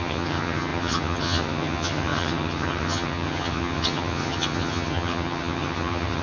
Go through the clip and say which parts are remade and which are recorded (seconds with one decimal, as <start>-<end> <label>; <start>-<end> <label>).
0.0-6.2 remade